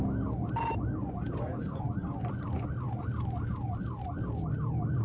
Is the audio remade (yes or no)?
no